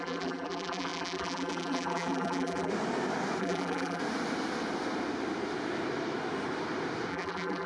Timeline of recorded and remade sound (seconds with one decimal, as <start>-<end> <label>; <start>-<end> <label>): 0.0-2.7 remade; 2.7-3.4 recorded; 3.4-4.0 remade; 4.0-7.1 recorded; 7.1-7.7 remade